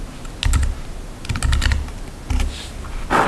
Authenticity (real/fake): real